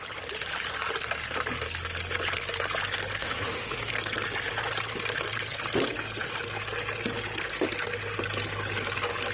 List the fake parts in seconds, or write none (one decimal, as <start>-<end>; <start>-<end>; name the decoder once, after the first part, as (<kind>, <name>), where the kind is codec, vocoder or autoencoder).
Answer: 3.2-3.9 (autoencoder, DAC-VAE)